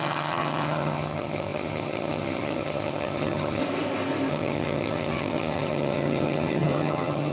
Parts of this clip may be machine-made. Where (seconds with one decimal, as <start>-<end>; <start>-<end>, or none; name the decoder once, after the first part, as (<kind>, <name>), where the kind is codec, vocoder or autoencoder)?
0.0-3.6 (vocoder, HiFi-GAN); 4.3-7.3